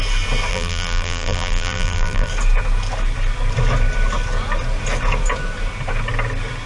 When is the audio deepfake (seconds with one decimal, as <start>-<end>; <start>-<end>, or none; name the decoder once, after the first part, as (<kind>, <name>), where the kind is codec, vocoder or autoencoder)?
0.5-2.3 (vocoder, BigVGAN v2)